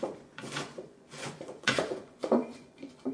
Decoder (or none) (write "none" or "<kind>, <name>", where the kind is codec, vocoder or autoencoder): vocoder, Vocos